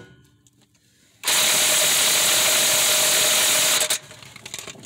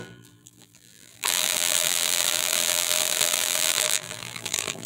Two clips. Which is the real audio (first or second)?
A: first